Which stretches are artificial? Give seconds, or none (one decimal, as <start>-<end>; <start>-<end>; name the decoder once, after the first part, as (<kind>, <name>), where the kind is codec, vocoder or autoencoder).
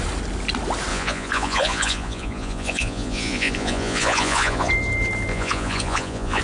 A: 0.9-4.7 (vocoder, Vocos); 5.3-6.4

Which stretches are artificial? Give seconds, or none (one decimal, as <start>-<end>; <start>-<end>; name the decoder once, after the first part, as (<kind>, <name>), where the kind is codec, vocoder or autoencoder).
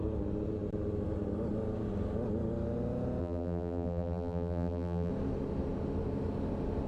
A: 3.2-5.1 (vocoder, BigVGAN v2)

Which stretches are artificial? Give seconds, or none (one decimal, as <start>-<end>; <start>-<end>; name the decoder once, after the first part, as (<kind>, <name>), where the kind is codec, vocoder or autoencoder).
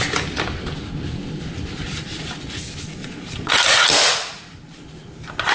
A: 3.0-3.5 (vocoder, Vocos)